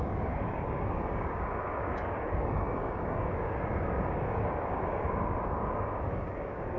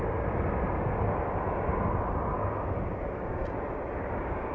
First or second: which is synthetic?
first